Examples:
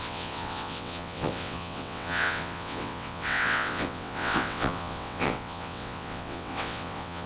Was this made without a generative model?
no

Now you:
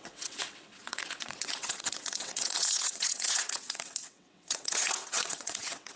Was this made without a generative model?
no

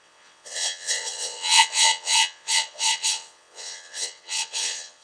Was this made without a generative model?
no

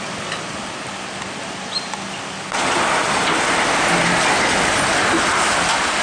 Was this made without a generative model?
yes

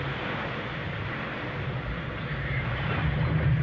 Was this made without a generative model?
yes